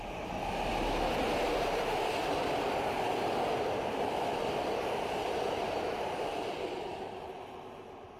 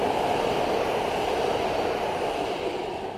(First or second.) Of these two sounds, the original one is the second